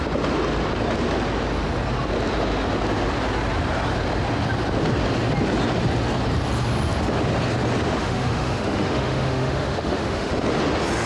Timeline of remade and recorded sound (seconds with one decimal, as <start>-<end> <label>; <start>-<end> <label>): 0.0-8.0 recorded; 8.0-10.3 remade; 10.3-11.1 recorded